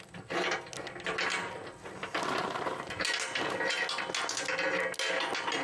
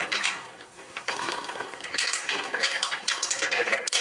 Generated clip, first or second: second